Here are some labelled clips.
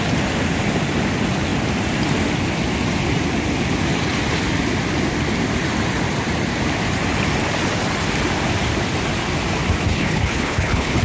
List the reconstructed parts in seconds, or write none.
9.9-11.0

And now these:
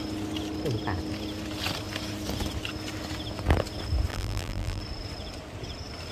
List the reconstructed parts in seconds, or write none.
4.1-4.8